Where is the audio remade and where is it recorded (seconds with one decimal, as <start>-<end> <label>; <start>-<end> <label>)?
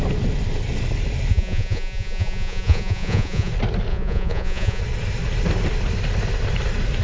0.0-1.3 recorded; 1.3-3.5 remade; 3.5-3.9 recorded; 3.9-4.8 remade; 4.8-7.0 recorded